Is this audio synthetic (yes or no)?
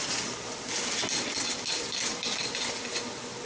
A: no